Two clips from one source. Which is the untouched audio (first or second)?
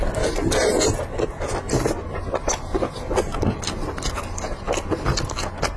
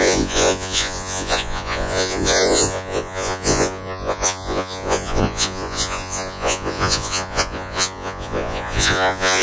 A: first